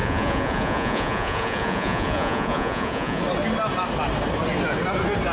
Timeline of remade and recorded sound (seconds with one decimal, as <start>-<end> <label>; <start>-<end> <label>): 0.0-3.2 remade; 3.2-5.3 recorded